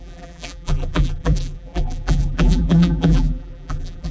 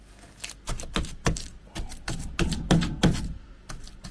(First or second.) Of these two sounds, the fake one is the first